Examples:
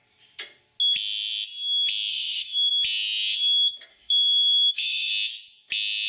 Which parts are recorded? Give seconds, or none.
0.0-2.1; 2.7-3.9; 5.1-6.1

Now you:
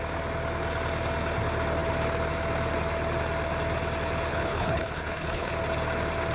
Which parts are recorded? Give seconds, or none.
0.0-4.3; 5.5-6.3

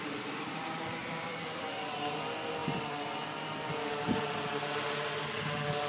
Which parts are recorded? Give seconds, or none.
0.0-5.9

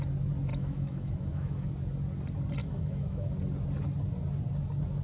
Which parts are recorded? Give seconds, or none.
0.0-0.5; 1.7-2.6; 3.4-5.0

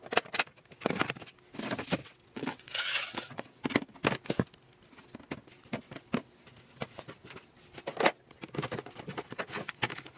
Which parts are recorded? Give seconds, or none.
0.0-2.0; 3.6-10.2

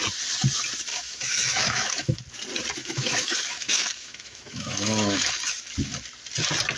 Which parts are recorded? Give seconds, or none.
0.0-0.9; 2.2-2.8; 5.3-6.8

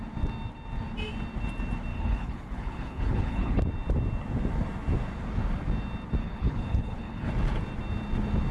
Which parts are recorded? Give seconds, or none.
0.0-1.9; 3.6-6.2; 7.3-8.5

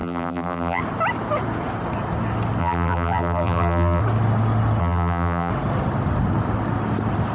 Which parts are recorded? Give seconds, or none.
0.8-2.6; 4.0-4.8; 5.5-7.3